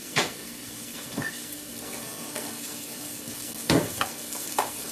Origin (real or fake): fake